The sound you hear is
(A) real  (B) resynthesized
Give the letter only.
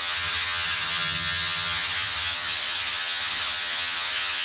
B